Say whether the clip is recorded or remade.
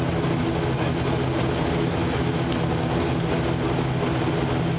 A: recorded